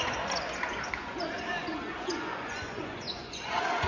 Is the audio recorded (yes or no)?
no